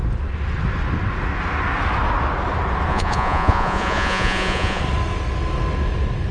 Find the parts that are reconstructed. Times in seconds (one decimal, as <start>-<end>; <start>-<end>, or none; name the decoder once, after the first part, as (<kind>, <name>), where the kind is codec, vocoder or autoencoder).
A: 2.9-4.8 (vocoder, Vocos)